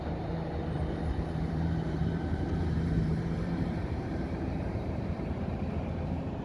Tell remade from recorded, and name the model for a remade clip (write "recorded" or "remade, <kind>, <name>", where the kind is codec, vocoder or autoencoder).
remade, vocoder, BigVGAN v2